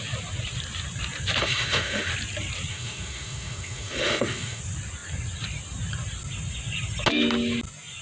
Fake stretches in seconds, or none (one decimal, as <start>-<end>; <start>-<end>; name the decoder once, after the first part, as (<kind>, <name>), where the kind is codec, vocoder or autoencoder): 1.4-2.1 (autoencoder, DAC-VAE); 2.7-4.6

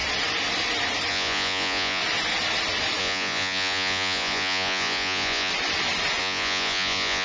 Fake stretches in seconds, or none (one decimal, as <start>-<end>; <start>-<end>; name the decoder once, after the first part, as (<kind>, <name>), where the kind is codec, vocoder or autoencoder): 1.1-2.0 (vocoder, Vocos); 3.0-5.5; 6.2-7.2

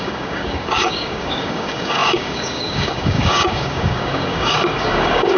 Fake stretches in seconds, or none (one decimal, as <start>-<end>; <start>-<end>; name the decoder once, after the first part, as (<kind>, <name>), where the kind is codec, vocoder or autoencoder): 0.0-5.4 (codec, DAC)

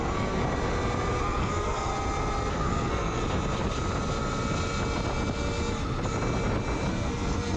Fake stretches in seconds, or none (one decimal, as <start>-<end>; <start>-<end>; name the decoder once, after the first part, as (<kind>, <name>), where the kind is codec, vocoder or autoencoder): 0.0-0.4 (codec, SNAC); 1.2-1.9; 2.5-3.2; 6.9-7.6

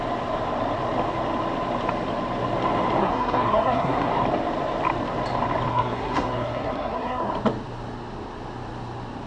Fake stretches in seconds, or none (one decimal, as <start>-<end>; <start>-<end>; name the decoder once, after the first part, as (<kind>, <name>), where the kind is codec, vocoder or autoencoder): 3.0-4.1 (codec, SNAC); 5.7-7.3